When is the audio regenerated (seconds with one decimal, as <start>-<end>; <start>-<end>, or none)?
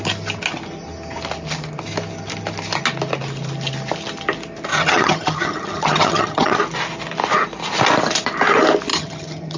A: 4.7-6.6; 8.9-9.6